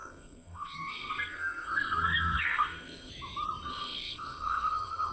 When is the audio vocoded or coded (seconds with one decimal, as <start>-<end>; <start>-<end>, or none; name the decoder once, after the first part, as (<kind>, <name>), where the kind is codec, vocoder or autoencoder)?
0.0-3.1 (codec, SNAC); 3.7-5.1